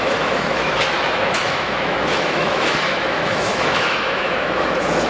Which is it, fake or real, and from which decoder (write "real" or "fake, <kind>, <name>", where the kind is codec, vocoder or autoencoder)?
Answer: fake, autoencoder, DAC-VAE